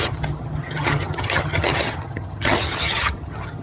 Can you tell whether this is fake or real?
fake